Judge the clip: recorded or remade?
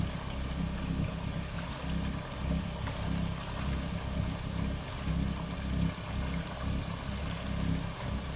recorded